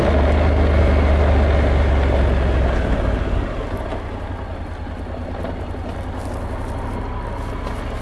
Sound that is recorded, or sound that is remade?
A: recorded